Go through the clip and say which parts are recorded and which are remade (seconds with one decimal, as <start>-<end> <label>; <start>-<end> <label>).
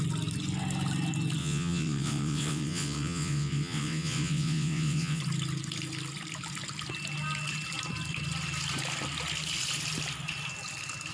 0.0-1.4 recorded; 1.4-5.2 remade; 5.2-11.1 recorded